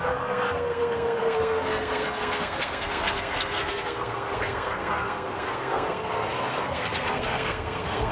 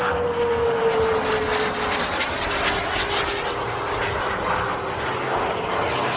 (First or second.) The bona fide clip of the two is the second